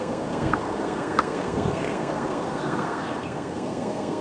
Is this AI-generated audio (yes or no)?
yes